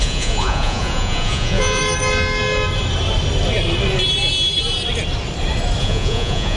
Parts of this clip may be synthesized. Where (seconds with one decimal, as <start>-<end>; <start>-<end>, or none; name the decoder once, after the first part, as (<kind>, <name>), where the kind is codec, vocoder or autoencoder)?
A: 0.0-1.8 (vocoder, Vocos); 5.8-6.6